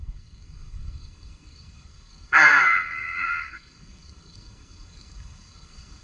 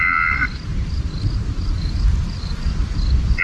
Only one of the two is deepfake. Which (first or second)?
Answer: first